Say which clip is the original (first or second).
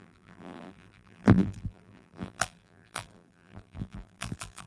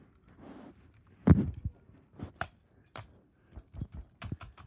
second